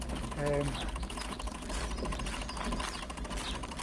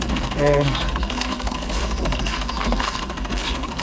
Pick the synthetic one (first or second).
second